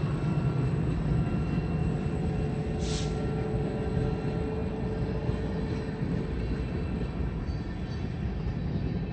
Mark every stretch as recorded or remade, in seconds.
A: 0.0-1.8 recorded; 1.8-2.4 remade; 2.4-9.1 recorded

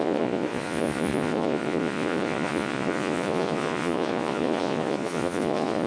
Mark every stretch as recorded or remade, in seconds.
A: 0.0-5.9 remade